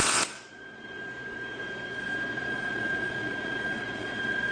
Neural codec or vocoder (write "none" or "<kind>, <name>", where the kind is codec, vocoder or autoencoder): vocoder, Vocos